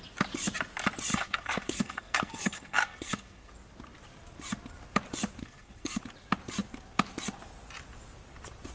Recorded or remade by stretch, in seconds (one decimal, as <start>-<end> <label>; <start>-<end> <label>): 0.0-1.1 recorded; 1.1-3.5 remade; 3.5-5.4 recorded; 5.4-6.0 remade; 6.0-8.7 recorded

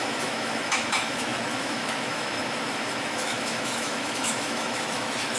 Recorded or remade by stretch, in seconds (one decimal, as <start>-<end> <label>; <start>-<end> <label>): 0.0-5.4 remade